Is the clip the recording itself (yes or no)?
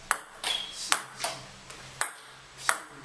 yes